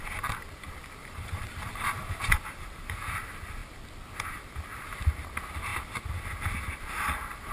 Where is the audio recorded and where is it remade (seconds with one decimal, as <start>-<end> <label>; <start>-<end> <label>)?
0.0-1.0 recorded; 1.0-3.1 remade; 3.1-7.5 recorded